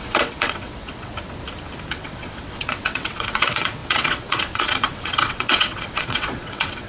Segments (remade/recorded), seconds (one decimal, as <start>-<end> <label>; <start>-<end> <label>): 0.0-1.1 remade; 1.1-1.9 recorded; 1.9-6.9 remade